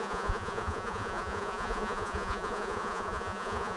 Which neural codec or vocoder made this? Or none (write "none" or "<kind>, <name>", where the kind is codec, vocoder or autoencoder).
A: vocoder, Vocos